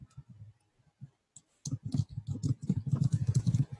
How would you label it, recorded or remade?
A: recorded